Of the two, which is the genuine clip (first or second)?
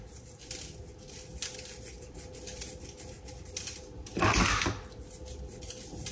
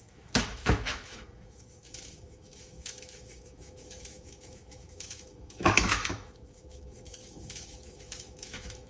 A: first